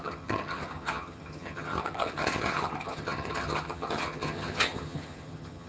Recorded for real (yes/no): no